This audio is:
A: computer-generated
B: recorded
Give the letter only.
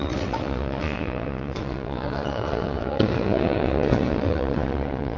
A